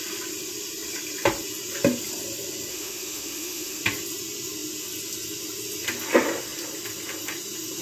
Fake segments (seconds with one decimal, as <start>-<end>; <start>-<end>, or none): 2.7-3.8